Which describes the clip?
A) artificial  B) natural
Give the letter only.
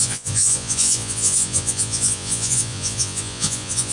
A